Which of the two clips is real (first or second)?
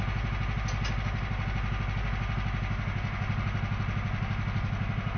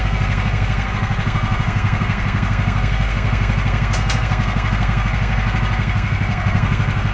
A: first